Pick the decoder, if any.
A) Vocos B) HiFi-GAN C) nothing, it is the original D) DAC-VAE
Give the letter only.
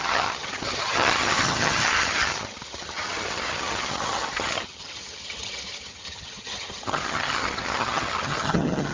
B